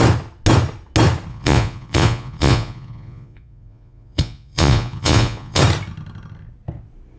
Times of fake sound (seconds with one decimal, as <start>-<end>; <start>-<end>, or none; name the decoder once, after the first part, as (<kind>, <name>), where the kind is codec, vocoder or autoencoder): 1.3-5.6 (vocoder, Vocos)